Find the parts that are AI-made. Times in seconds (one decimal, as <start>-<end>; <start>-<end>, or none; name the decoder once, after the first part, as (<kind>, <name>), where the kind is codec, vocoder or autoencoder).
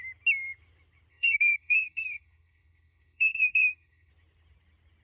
1.1-4.1 (codec, SNAC)